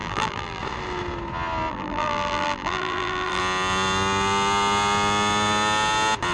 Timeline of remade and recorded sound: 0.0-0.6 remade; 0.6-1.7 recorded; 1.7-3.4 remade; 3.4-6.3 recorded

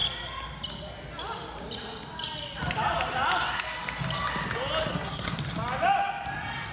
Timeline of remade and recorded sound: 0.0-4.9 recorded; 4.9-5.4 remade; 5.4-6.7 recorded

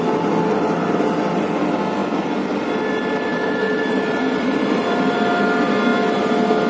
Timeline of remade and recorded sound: 0.0-3.3 recorded; 3.3-5.3 remade; 5.3-6.7 recorded

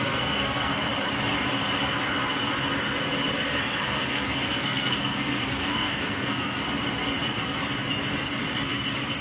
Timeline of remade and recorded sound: 0.0-0.9 remade; 0.9-3.6 recorded; 3.6-6.6 remade; 6.6-9.2 recorded

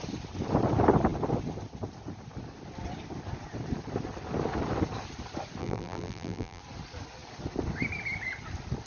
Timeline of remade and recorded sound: 0.0-5.6 recorded; 5.6-6.6 remade; 6.6-8.9 recorded

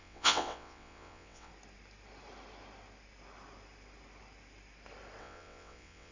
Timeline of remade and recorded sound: 0.0-1.5 remade; 1.5-5.2 recorded; 5.2-6.1 remade

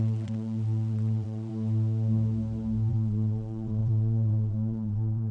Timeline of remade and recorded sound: 0.0-1.5 remade; 1.5-2.9 recorded; 2.9-5.3 remade

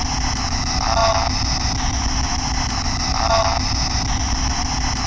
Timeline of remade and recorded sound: 0.0-5.1 recorded